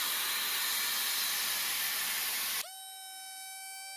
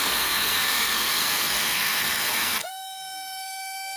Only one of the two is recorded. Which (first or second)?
first